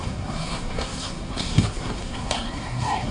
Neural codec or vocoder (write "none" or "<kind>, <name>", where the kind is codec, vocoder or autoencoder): codec, SNAC